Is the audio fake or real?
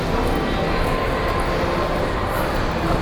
real